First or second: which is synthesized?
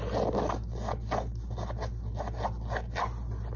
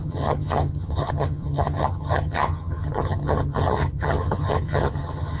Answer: second